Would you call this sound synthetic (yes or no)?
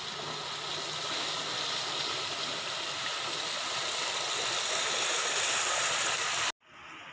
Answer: no